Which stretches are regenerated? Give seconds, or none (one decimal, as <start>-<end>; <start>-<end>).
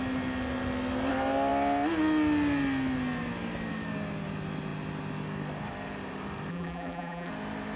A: 6.5-7.3